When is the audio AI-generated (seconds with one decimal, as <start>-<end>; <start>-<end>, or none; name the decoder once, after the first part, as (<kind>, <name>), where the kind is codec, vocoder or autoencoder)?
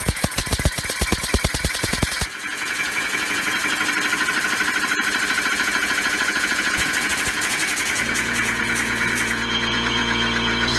0.0-0.4 (vocoder, Vocos); 1.8-3.6; 5.5-10.8